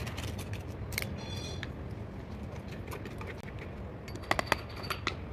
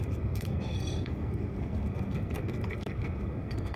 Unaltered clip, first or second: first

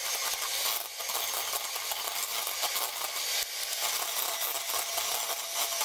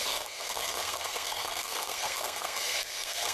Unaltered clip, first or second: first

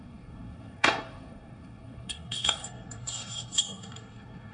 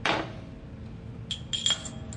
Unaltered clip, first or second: second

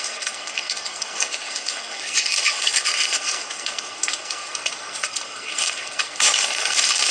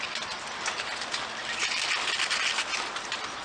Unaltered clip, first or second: second